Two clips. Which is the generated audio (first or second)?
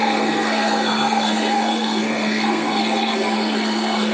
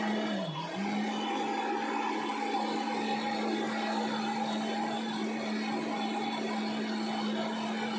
first